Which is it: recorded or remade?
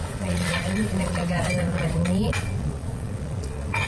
remade